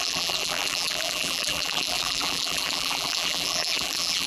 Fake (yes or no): yes